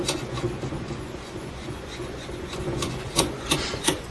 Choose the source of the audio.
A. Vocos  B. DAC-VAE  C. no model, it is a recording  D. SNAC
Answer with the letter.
A